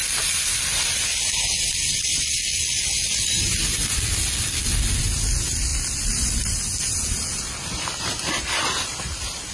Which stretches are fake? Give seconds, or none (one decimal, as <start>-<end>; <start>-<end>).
none